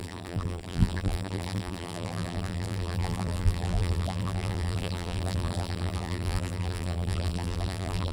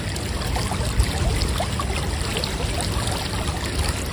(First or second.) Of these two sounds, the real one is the second